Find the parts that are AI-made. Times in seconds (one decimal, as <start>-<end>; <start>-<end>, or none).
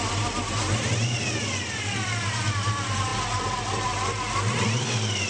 none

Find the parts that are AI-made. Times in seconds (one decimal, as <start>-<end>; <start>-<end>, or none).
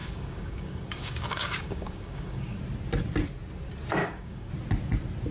0.0-2.6; 4.0-4.5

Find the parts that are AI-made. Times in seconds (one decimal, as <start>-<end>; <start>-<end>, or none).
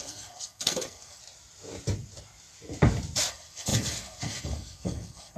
0.0-1.2; 3.3-5.4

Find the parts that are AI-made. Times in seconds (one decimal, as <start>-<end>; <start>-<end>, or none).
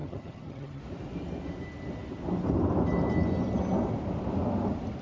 0.0-0.8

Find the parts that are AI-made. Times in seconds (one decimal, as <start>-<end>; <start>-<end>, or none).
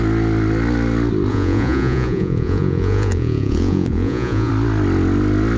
1.3-4.5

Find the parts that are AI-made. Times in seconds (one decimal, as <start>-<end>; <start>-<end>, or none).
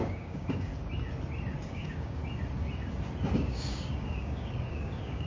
0.0-0.7; 1.6-2.2; 3.3-5.3